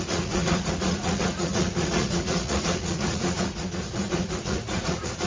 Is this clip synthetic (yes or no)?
yes